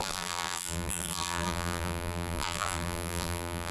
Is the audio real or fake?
fake